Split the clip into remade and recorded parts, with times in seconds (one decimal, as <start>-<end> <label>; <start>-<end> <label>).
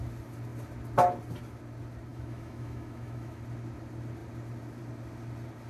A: 0.0-2.1 recorded; 2.1-3.4 remade; 3.4-5.7 recorded